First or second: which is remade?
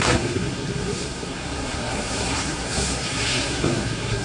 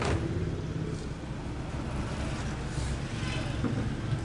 first